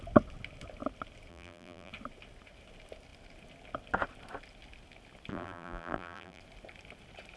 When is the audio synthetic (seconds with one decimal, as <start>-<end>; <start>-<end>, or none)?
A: 1.3-1.9; 5.3-6.4